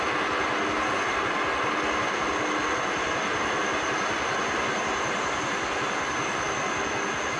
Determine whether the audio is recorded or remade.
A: recorded